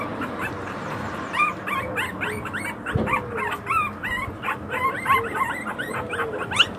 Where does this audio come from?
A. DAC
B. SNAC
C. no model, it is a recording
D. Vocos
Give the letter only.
C